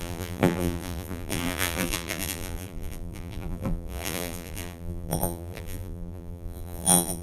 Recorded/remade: remade